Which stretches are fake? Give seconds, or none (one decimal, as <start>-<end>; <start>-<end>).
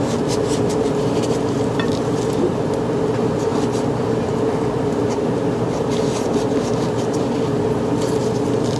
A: 3.5-5.3